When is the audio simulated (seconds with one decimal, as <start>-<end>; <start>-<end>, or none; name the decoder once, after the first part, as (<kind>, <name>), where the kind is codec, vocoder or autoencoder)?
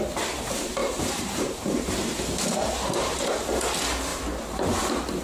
0.8-3.3 (vocoder, BigVGAN v2); 4.1-4.8